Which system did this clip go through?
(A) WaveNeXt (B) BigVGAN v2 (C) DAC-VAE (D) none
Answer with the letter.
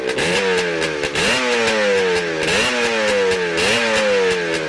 D